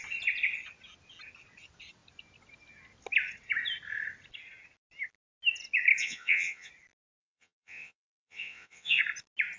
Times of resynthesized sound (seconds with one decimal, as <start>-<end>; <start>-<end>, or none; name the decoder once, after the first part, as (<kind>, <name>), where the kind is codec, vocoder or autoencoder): 6.0-6.7 (vocoder, WaveNeXt); 7.2-9.0